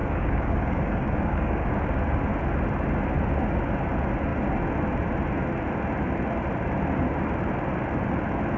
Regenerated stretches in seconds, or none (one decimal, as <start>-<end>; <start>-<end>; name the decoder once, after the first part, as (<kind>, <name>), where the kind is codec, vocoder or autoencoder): 0.0-1.7 (codec, DAC)